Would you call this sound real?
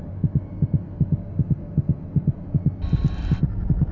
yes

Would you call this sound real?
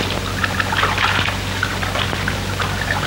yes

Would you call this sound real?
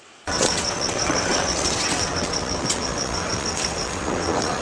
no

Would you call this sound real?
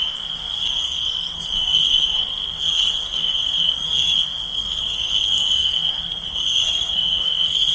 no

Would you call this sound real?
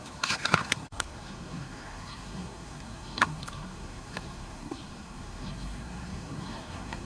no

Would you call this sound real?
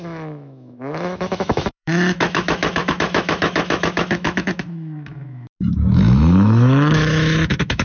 no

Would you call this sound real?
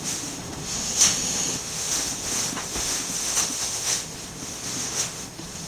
no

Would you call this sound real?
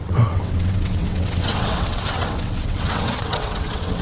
no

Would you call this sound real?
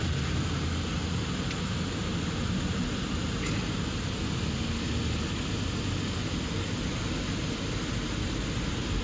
yes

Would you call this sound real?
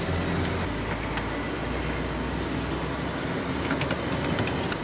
yes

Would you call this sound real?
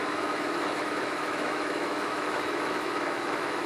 no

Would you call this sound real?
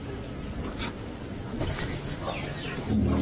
yes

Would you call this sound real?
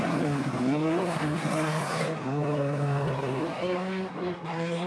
no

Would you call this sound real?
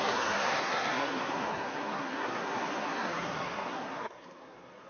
no